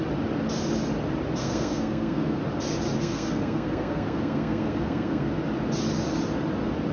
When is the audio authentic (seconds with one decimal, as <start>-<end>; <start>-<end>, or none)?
0.0-1.4; 2.4-3.0; 5.3-6.9